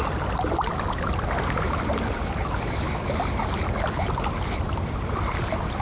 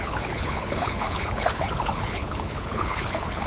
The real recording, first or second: first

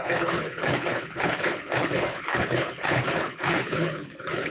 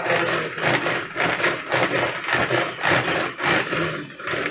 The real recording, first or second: second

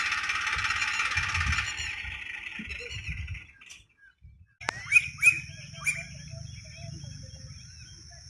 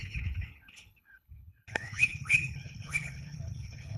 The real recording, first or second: first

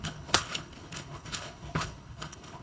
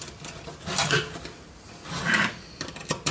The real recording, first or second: second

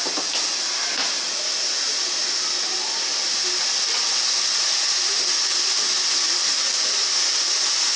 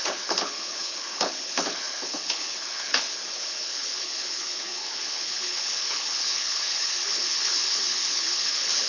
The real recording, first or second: first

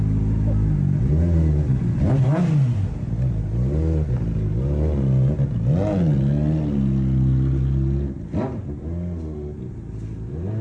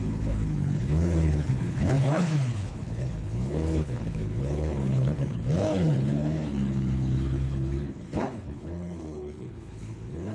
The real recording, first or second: first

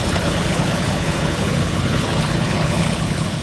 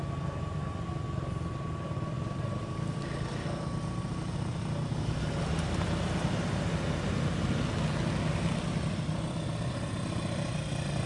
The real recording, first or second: second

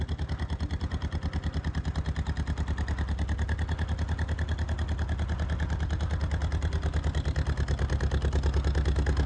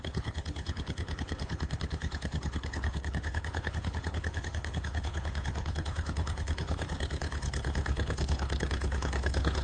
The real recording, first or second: first